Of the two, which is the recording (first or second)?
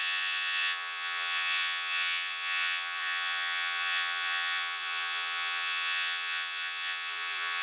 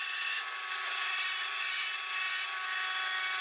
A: second